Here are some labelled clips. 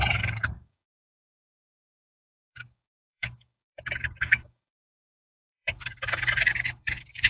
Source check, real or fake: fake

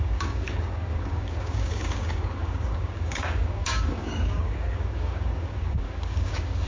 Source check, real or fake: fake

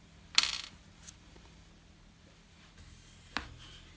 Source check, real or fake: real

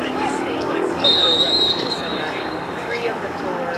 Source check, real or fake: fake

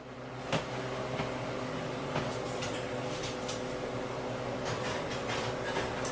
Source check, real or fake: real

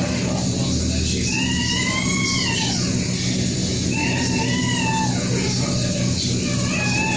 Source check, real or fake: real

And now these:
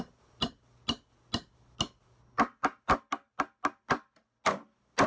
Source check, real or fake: real